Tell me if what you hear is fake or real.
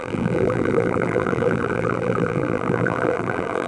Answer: fake